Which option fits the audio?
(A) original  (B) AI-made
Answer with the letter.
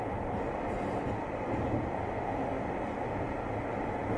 A